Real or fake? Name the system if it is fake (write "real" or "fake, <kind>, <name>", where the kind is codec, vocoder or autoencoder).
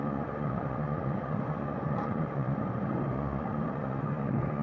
fake, vocoder, Vocos